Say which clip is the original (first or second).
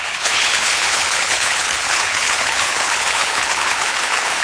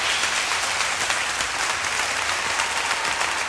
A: second